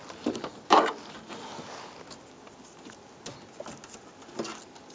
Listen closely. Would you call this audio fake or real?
real